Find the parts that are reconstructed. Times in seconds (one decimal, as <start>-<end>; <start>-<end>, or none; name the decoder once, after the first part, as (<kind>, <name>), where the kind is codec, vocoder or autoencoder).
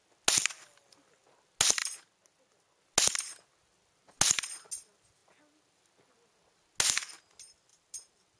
7.7-8.4 (vocoder, BigVGAN v2)